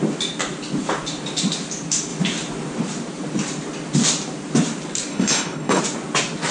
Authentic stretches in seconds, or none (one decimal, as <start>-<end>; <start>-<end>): 0.0-5.1; 5.8-6.5